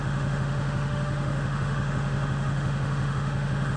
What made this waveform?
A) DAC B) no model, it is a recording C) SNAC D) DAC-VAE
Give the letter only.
D